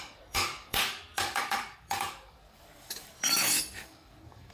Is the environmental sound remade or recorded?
remade